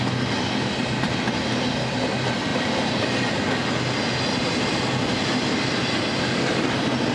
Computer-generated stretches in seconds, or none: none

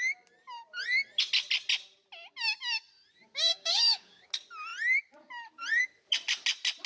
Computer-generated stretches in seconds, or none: 3.5-4.3 (codec, DAC)

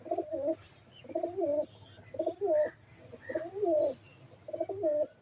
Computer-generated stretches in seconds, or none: none

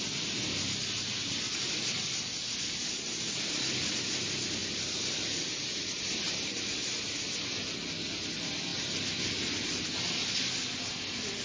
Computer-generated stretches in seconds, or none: none